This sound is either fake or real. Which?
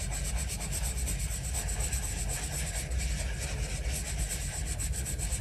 real